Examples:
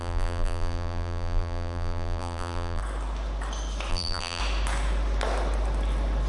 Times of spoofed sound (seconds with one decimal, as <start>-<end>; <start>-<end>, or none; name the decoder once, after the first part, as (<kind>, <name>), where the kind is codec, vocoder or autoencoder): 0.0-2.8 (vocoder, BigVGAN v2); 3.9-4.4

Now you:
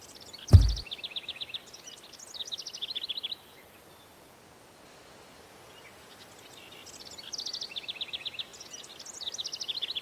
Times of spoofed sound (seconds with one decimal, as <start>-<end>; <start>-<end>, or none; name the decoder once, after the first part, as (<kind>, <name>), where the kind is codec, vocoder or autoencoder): none

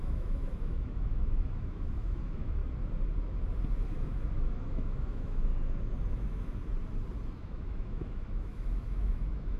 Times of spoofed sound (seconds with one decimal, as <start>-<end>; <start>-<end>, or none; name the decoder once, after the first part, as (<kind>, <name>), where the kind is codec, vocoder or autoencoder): 0.0-2.6 (autoencoder, DAC-VAE); 3.9-5.5; 6.1-6.5; 7.4-9.6

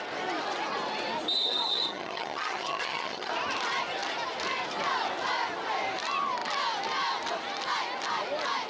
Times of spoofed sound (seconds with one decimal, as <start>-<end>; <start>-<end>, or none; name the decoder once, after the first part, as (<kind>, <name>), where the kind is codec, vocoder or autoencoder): 1.4-3.3 (vocoder, HiFi-GAN)